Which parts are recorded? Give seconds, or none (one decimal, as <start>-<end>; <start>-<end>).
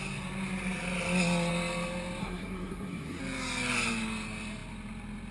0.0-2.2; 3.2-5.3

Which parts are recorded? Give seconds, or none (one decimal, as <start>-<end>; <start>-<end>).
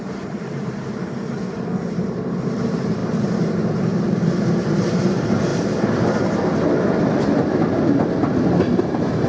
0.6-1.9; 3.0-4.7; 5.5-8.8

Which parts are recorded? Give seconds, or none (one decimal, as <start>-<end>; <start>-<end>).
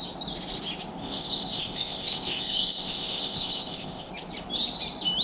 0.0-1.0; 4.1-5.2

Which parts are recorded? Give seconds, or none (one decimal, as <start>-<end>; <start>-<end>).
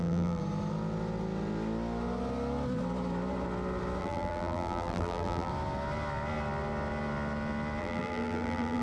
0.4-4.0; 5.5-7.8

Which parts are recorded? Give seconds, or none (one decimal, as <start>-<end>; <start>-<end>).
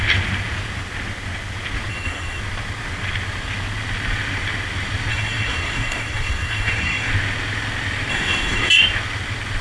0.0-1.9; 2.4-5.1; 7.1-8.1; 8.7-9.6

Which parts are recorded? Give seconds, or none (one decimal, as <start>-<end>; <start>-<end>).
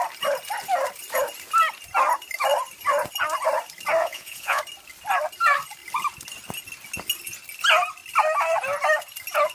0.0-4.0; 4.6-9.5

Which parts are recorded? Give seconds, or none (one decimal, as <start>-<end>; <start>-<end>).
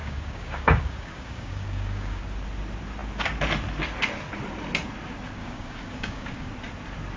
2.2-5.4; 6.5-7.2